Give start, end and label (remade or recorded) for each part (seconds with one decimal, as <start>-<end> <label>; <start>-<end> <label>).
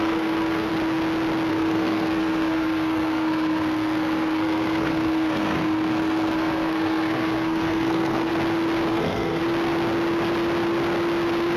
0.0-0.7 remade; 0.7-1.5 recorded; 1.5-8.3 remade; 8.3-8.9 recorded; 8.9-9.4 remade; 9.4-11.6 recorded